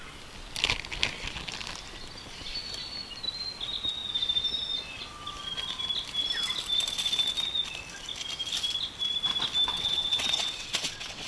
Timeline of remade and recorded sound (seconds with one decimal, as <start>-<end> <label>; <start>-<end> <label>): 0.0-9.7 recorded; 9.7-11.3 remade